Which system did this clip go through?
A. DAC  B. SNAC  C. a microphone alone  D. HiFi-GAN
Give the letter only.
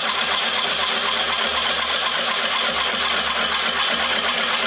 C